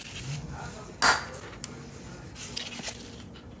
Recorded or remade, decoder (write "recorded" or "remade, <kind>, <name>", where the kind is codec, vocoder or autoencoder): recorded